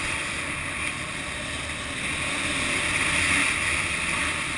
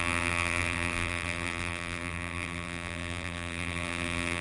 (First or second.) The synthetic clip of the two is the second